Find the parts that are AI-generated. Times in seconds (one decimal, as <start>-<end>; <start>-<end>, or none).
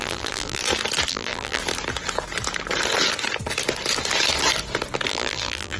0.0-0.6; 1.1-1.6; 5.1-5.8